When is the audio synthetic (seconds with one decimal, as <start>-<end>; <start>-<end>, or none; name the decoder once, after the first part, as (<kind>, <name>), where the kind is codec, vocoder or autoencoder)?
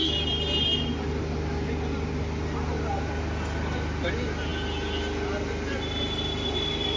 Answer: none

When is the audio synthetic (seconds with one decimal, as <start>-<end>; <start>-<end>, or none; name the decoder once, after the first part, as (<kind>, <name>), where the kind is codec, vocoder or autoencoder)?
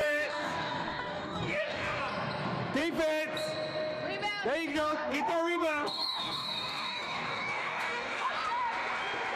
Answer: 0.0-2.0 (codec, DAC); 4.7-8.3